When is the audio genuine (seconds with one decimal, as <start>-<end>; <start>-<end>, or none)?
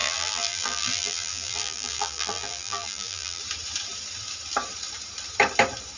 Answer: 3.4-6.0